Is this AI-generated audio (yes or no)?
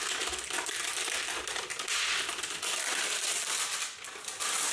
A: no